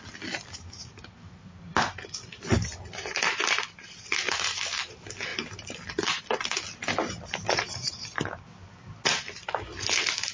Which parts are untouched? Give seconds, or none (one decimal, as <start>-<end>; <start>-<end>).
0.0-10.3